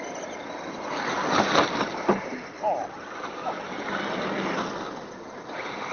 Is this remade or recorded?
recorded